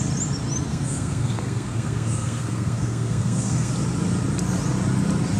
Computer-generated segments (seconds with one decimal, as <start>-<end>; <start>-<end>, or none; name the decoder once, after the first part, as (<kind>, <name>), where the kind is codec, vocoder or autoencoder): 0.7-3.7 (codec, SNAC)